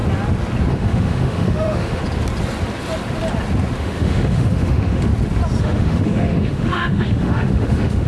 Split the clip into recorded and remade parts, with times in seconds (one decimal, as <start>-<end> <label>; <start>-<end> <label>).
0.0-0.7 recorded; 0.7-2.0 remade; 2.0-3.8 recorded; 3.8-5.1 remade; 5.1-5.6 recorded; 5.6-8.1 remade